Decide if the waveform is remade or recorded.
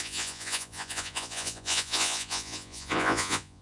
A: remade